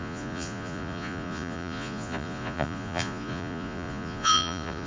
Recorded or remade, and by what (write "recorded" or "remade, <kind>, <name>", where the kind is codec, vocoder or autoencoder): remade, vocoder, Vocos